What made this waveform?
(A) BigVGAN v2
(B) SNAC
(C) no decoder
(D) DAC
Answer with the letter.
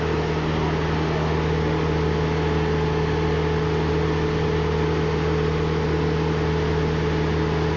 C